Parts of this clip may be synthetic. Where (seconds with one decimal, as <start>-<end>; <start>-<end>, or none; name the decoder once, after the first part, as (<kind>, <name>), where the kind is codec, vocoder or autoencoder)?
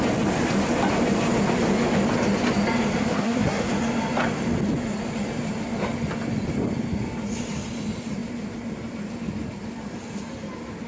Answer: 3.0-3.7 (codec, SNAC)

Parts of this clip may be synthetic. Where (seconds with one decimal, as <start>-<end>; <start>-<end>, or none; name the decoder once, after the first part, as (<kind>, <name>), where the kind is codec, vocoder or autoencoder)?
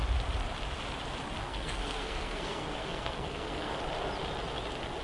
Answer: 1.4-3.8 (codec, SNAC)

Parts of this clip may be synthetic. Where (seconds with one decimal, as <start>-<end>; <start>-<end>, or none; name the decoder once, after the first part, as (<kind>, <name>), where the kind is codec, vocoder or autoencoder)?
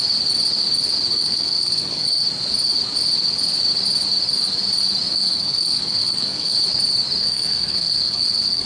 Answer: 1.2-2.2 (codec, SNAC); 5.1-6.6; 7.2-8.7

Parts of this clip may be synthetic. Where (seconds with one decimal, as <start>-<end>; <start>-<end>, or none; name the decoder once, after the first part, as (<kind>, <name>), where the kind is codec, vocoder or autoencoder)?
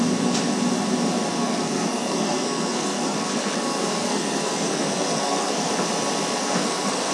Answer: 1.4-5.7 (codec, SNAC); 6.4-7.1